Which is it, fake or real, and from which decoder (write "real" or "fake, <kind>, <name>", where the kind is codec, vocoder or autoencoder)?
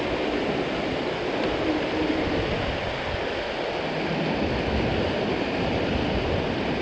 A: real